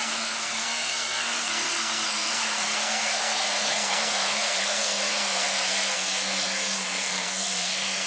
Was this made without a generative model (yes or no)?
no